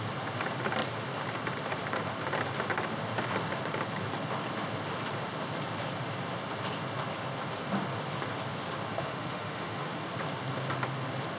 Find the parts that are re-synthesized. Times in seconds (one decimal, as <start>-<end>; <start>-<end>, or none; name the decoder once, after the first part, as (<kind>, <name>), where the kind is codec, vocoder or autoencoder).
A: 8.9-10.0 (autoencoder, DAC-VAE)